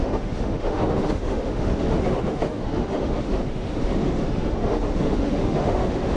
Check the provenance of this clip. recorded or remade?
remade